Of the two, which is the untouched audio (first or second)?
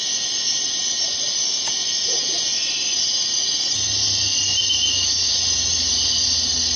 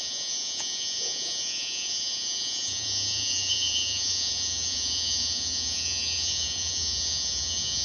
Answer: first